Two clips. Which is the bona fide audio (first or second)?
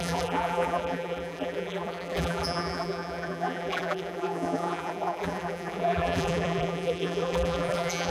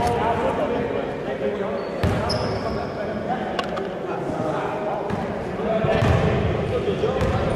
second